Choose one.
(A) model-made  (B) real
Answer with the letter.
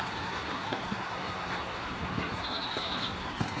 A